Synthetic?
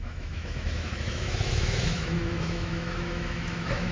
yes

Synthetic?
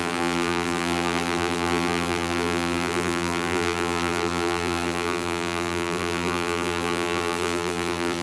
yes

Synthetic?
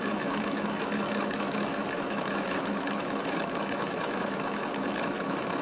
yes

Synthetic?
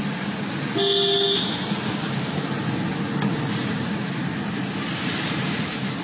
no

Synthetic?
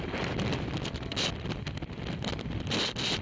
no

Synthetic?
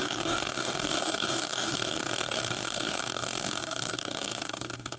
yes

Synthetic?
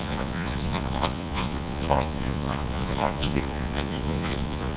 yes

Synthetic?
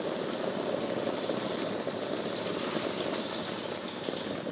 no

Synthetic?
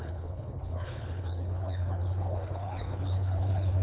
yes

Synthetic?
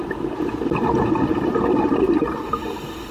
no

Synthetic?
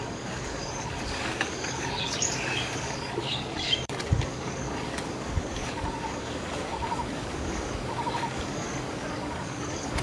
yes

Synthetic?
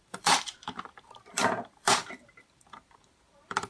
yes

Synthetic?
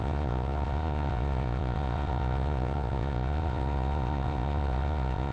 yes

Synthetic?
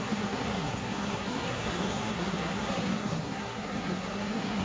yes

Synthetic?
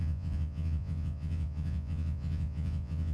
yes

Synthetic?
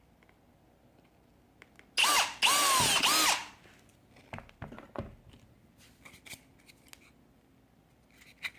no